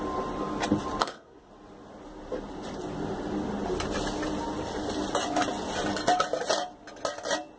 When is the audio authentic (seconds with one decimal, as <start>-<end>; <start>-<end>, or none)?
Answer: 0.0-1.0; 1.5-7.6